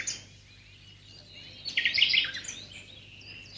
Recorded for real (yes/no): yes